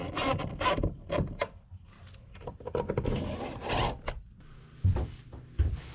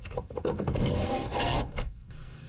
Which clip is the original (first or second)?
first